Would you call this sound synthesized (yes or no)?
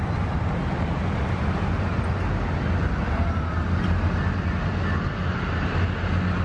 no